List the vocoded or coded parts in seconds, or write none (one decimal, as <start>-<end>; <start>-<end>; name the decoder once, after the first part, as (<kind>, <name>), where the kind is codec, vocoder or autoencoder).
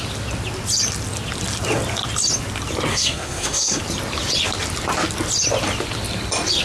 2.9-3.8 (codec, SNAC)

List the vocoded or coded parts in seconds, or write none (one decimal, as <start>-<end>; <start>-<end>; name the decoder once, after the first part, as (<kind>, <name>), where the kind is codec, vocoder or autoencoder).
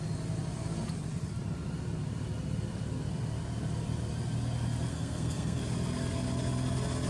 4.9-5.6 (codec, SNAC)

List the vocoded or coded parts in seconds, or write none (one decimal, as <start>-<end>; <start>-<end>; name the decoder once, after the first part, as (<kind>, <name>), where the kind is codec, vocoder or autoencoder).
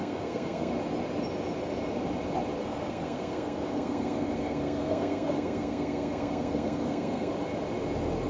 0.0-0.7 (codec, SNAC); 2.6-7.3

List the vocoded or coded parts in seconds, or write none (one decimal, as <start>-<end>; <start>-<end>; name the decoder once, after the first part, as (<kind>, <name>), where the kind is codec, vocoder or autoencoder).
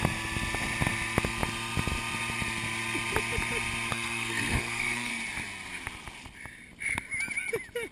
3.9-5.1 (codec, SNAC)